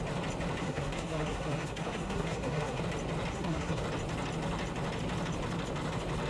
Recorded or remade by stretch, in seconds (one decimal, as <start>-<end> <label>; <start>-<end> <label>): 0.0-0.6 recorded; 0.6-2.8 remade; 2.8-3.3 recorded; 3.3-3.8 remade; 3.8-6.3 recorded